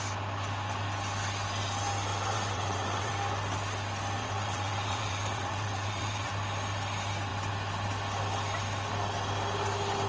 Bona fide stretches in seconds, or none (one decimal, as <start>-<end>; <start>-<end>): 0.0-2.1; 3.1-4.2; 6.3-10.1

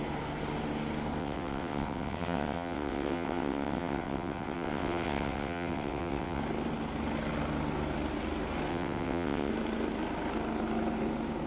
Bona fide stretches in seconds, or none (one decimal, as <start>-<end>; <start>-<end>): 0.0-1.2; 6.4-8.7; 9.5-11.5

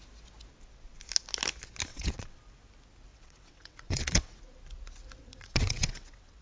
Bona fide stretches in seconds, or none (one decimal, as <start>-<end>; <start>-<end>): 0.0-1.9; 2.4-3.1; 4.4-5.2

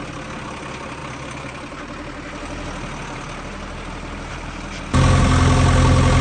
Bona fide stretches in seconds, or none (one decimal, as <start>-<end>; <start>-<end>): 0.0-6.2

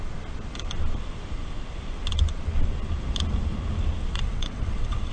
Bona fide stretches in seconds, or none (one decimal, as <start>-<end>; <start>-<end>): 0.0-4.1

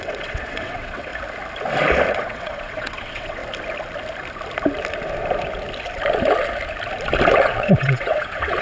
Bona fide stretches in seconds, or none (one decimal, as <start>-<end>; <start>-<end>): 1.1-2.1; 3.4-7.3